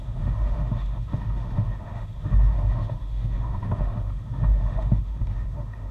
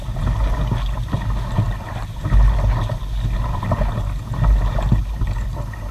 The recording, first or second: second